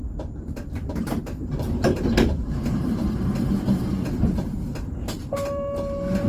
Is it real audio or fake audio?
fake